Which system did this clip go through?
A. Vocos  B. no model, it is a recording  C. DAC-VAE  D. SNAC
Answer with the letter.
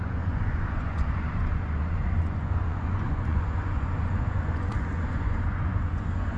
A